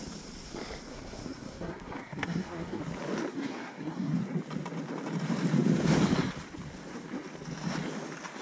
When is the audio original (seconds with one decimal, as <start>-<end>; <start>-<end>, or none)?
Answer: 0.0-0.9; 2.8-3.3; 4.2-8.4